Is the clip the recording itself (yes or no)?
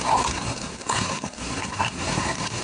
no